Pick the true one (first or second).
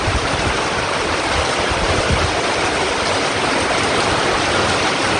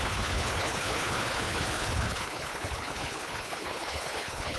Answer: first